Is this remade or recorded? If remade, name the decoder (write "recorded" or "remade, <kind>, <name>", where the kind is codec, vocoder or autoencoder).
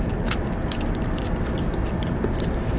recorded